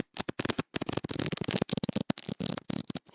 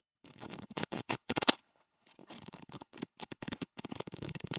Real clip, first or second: first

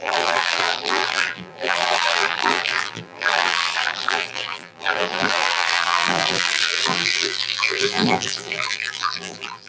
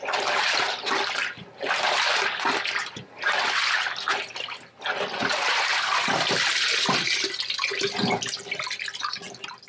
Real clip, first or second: second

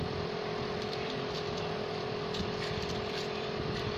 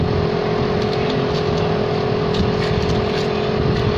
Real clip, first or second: second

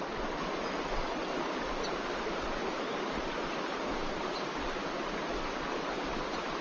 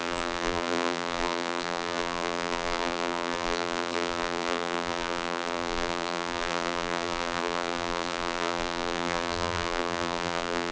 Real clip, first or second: first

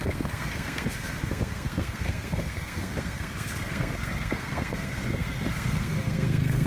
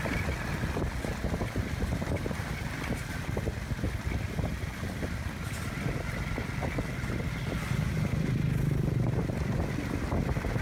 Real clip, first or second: second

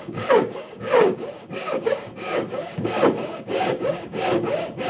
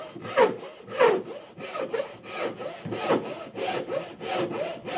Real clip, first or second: second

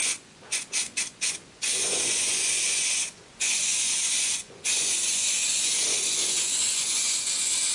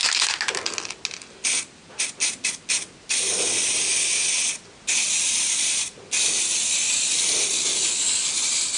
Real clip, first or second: second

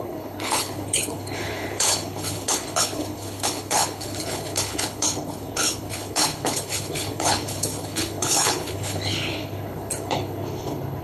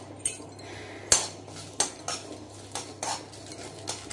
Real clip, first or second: second